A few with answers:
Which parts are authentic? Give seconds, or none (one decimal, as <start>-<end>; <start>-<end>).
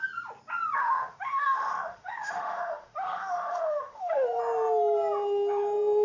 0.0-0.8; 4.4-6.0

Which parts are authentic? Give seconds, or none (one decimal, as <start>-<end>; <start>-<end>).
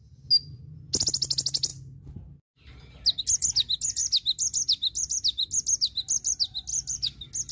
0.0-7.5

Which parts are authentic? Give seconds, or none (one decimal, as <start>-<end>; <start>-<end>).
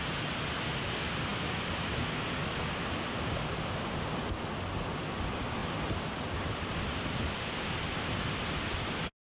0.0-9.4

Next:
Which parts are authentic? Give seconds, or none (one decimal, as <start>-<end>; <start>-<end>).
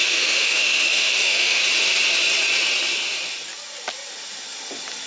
1.6-5.1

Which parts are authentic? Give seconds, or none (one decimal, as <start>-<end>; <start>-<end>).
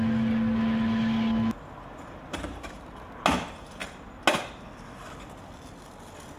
0.0-6.4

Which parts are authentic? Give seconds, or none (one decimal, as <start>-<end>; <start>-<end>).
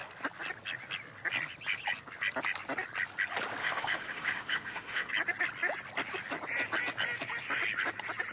0.0-3.6; 5.1-8.3